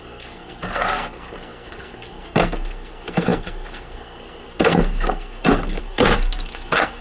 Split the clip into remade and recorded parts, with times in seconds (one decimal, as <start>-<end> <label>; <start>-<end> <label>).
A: 0.0-7.0 remade